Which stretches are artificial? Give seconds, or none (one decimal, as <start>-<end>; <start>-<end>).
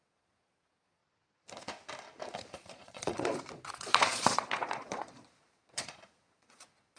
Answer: 0.0-1.0; 2.5-7.0